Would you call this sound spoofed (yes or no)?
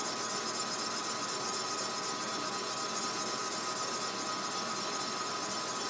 no